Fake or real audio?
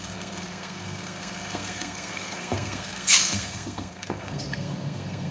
fake